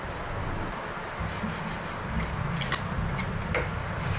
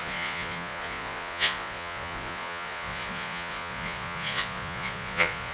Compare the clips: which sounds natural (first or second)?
first